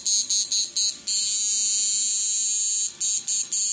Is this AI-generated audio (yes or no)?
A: no